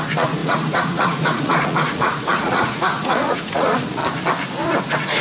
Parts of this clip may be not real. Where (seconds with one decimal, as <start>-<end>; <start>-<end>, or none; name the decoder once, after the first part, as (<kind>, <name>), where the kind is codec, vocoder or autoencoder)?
0.0-4.0 (vocoder, Vocos); 4.8-5.2